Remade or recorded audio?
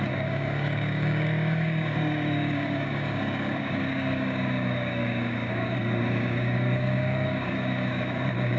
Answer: remade